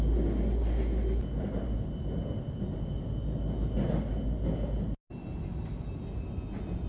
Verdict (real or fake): real